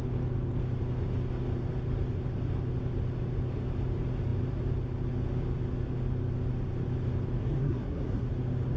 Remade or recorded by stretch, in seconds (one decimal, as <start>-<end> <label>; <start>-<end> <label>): 0.0-7.4 recorded; 7.4-8.3 remade; 8.3-8.8 recorded